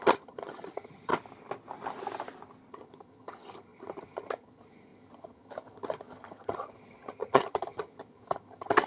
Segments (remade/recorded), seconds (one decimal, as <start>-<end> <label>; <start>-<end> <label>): 0.0-1.1 remade; 1.1-2.7 recorded; 2.7-8.9 remade